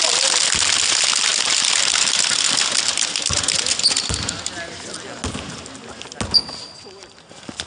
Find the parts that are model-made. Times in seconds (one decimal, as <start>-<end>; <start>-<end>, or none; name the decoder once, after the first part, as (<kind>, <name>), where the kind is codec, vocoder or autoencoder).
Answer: none